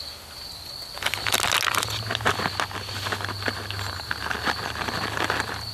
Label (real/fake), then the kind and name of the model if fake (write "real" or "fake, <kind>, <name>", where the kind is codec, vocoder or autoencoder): real